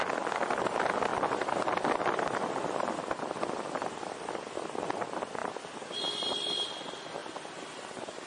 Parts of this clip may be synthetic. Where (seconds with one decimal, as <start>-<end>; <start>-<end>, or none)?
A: 1.1-4.4; 5.4-6.1; 7.2-7.7